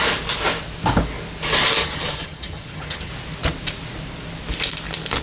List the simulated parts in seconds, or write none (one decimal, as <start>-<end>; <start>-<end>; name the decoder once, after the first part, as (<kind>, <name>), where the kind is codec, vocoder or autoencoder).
1.8-3.1 (vocoder, HiFi-GAN)